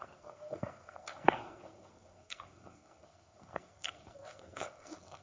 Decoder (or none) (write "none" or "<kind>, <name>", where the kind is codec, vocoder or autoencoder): codec, SNAC